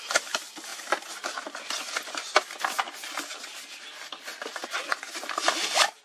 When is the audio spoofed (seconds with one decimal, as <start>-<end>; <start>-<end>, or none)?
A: none